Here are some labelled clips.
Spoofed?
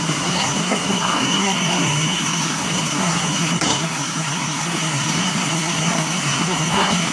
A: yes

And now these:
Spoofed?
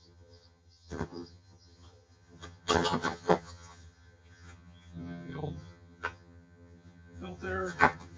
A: yes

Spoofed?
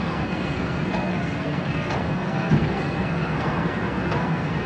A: yes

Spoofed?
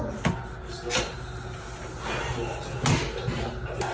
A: no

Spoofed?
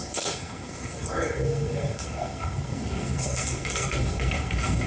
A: yes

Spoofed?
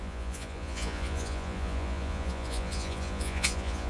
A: yes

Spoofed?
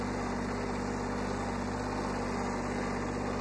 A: no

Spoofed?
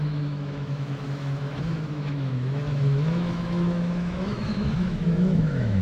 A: yes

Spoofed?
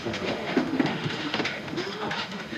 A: yes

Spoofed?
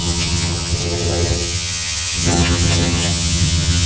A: yes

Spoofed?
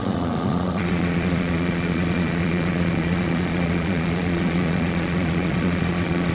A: yes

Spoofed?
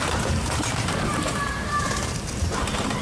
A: yes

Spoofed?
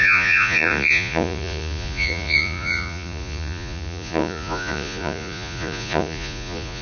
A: yes